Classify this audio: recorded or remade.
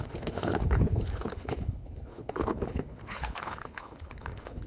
remade